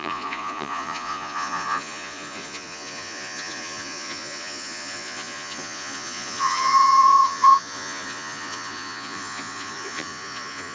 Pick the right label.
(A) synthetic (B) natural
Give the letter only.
A